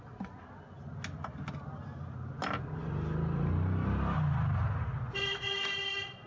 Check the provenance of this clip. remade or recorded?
recorded